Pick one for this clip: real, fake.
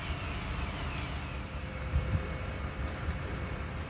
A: fake